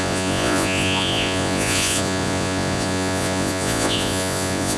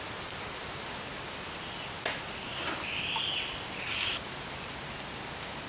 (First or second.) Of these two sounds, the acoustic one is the second